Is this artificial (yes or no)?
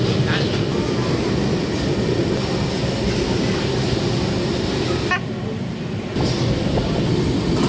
no